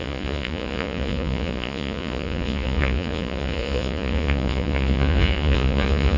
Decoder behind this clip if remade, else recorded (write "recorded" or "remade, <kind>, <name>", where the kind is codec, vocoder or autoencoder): remade, vocoder, Vocos